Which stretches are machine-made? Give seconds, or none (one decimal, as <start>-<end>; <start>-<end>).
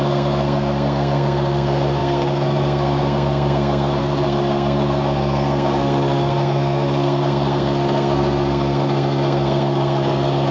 0.0-10.5